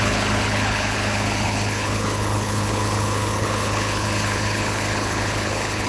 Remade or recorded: remade